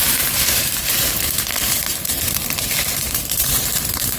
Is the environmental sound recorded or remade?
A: remade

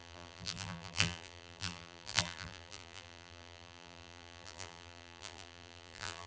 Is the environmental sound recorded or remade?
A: remade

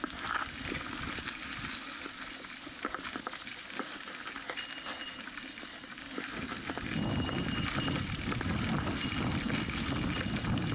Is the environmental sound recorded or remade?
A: recorded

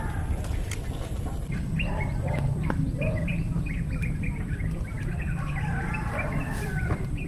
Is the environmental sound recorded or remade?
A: remade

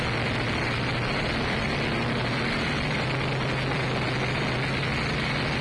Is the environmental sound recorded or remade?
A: recorded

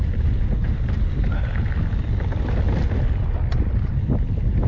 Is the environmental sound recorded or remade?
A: recorded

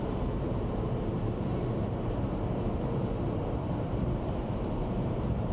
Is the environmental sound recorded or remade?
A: remade